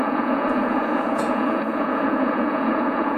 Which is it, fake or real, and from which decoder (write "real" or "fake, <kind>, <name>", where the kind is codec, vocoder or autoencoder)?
fake, vocoder, Vocos